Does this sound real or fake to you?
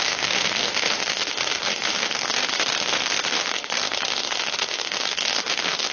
fake